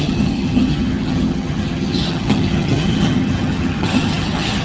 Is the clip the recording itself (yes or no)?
no